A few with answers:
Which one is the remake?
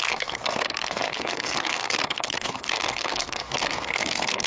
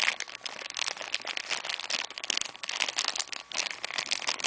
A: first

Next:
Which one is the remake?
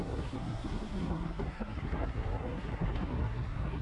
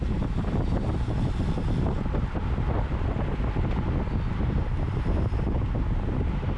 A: first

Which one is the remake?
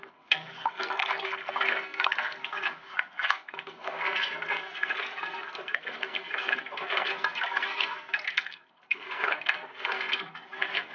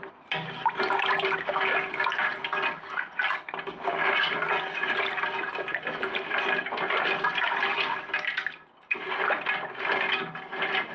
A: first